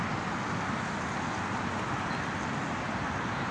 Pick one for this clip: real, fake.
real